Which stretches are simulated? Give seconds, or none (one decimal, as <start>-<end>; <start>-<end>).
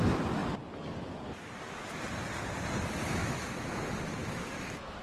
3.2-3.8; 4.2-5.0